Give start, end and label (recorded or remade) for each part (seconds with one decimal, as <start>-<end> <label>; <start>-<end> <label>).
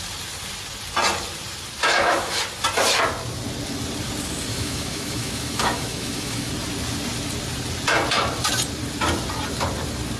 0.0-1.8 recorded; 1.8-2.4 remade; 2.4-4.5 recorded; 4.5-6.5 remade; 6.5-10.2 recorded